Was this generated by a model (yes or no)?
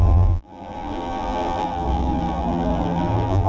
yes